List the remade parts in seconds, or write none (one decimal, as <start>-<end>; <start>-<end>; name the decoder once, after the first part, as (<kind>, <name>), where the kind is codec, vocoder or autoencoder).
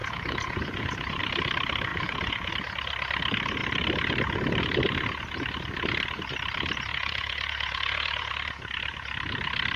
0.0-1.2 (vocoder, Vocos); 1.9-2.5; 6.9-8.3